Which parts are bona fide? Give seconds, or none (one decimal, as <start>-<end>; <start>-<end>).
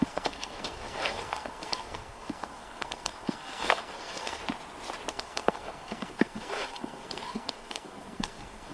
4.4-5.1